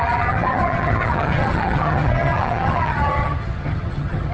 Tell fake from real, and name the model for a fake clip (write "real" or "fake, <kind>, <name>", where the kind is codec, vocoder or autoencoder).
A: fake, vocoder, HiFi-GAN